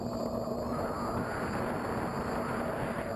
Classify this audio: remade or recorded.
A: recorded